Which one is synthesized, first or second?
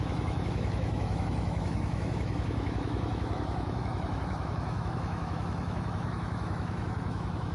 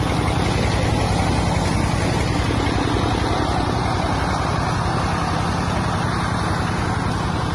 first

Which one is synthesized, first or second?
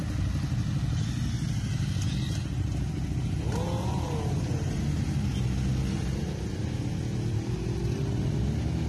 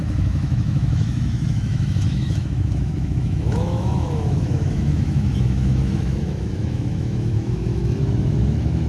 second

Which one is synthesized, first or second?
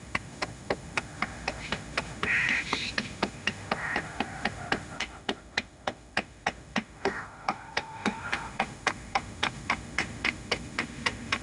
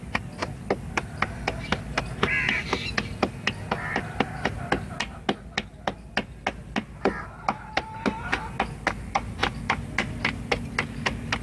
first